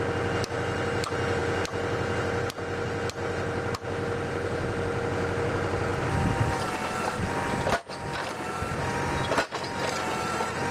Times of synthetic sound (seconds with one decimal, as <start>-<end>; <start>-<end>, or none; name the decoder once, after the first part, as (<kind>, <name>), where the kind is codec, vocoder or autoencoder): none